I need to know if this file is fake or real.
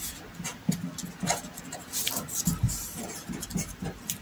real